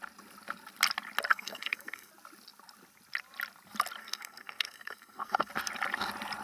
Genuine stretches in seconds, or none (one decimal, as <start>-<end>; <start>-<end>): 0.0-1.3; 2.1-4.0; 5.5-6.4